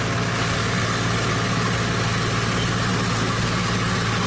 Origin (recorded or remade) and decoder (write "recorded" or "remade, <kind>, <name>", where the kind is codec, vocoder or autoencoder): recorded